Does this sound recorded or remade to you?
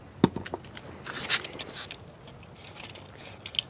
recorded